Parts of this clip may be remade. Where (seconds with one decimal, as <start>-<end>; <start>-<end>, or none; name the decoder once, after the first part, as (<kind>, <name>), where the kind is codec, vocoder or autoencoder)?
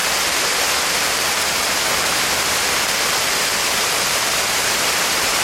3.6-5.4 (vocoder, BigVGAN v2)